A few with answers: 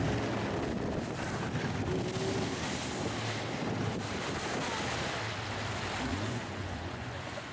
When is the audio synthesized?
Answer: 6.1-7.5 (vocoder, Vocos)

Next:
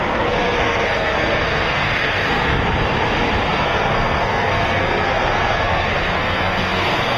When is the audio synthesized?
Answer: 0.0-2.5 (codec, SNAC); 3.5-7.2

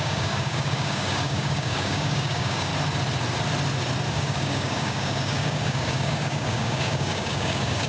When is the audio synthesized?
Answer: 0.0-2.7 (codec, DAC); 4.1-7.9

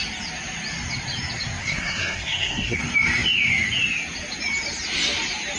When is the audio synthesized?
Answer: 1.6-2.8 (codec, SNAC)